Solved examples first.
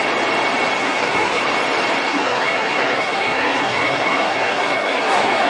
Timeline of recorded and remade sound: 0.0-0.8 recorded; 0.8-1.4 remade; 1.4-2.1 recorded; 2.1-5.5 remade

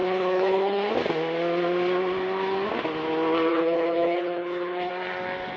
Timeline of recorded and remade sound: 0.0-0.9 remade; 0.9-3.5 recorded; 3.5-4.9 remade; 4.9-5.6 recorded

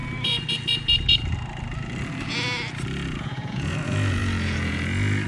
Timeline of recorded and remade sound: 0.0-3.2 recorded; 3.2-5.3 remade

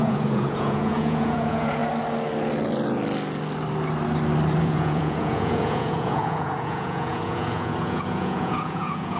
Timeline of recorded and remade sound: 0.0-1.8 remade; 1.8-4.6 recorded; 4.6-9.2 remade